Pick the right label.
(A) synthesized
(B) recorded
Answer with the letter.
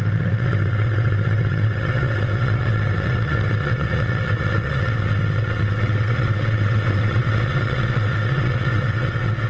A